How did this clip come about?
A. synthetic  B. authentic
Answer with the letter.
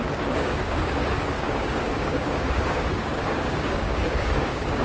A